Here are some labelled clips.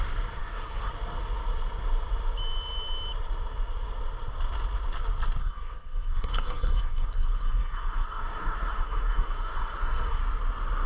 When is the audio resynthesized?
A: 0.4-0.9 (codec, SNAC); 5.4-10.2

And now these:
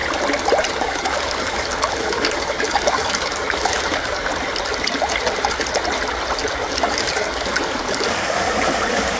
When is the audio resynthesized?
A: 0.7-4.3 (codec, DAC); 6.7-9.2

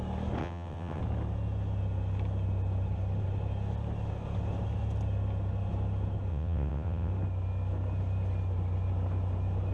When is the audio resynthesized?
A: 0.4-1.0 (vocoder, WaveNeXt); 6.3-7.1